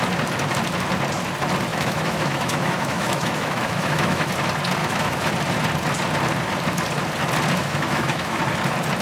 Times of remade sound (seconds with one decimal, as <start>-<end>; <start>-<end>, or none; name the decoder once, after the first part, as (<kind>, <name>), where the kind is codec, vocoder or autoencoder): 1.7-4.3 (autoencoder, DAC-VAE); 4.8-5.3; 7.6-8.4